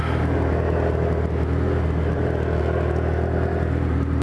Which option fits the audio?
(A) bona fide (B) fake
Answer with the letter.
A